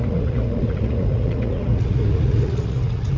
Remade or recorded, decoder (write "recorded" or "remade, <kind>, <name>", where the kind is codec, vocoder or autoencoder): remade, vocoder, Vocos